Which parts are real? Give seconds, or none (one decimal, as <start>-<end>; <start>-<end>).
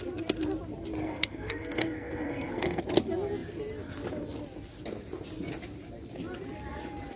0.0-1.0; 2.8-7.2